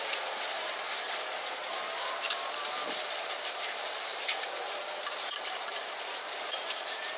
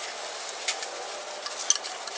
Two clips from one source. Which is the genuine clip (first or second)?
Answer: second